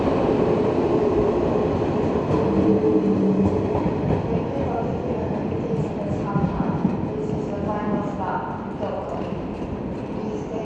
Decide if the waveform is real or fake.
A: real